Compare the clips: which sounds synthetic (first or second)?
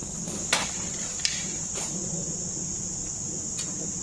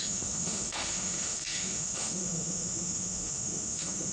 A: second